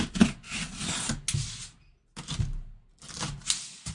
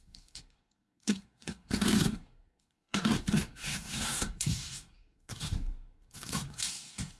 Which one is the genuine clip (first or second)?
first